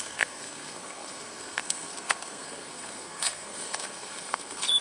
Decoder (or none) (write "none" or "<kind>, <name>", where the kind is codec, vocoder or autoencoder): codec, SNAC